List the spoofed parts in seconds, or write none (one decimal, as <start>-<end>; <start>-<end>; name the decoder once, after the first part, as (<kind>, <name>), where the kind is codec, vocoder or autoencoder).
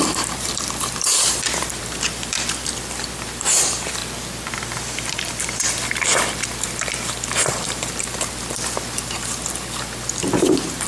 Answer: 0.0-4.0 (vocoder, BigVGAN v2); 4.5-10.9